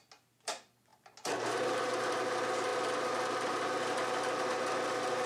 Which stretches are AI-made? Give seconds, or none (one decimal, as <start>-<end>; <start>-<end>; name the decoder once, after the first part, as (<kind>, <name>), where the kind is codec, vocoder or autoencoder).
none